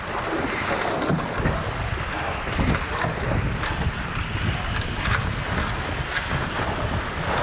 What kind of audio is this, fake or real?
real